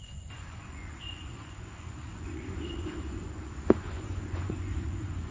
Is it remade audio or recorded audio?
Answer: remade